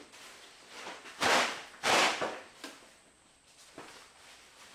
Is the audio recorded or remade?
remade